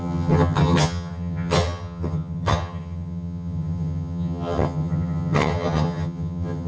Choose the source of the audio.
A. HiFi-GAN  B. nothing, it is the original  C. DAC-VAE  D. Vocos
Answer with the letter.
A